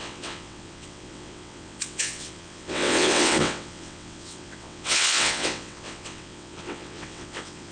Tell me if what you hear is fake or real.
fake